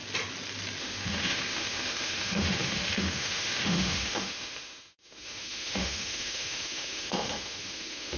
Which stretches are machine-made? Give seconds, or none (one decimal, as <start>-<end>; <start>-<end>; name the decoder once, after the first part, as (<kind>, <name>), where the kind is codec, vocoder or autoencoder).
0.8-8.2 (autoencoder, DAC-VAE)